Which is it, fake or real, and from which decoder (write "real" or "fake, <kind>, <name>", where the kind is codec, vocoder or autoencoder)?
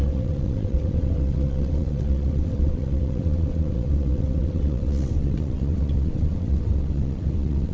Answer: fake, vocoder, WaveNeXt